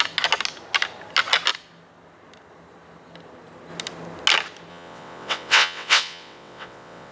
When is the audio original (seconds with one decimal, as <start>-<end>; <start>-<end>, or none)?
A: 0.0-4.7